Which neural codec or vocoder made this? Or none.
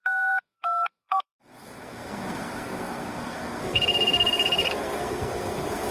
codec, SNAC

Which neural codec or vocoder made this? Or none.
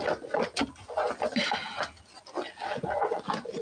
none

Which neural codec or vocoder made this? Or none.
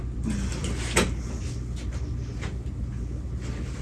none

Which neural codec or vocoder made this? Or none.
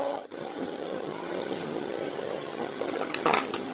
vocoder, HiFi-GAN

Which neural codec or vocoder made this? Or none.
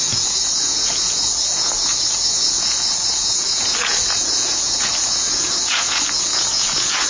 vocoder, Vocos